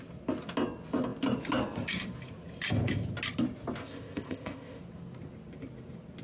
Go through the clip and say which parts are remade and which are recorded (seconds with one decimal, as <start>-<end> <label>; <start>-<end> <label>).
0.0-3.8 recorded; 3.8-4.8 remade; 4.8-6.2 recorded